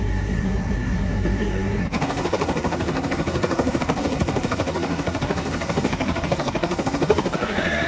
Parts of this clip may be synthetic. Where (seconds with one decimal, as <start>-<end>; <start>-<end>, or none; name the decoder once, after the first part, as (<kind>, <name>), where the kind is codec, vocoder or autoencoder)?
0.0-7.9 (codec, SNAC)